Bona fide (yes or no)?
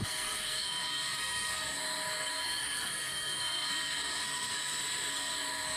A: no